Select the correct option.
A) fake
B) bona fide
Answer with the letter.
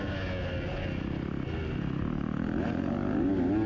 B